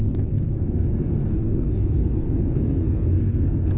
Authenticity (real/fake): fake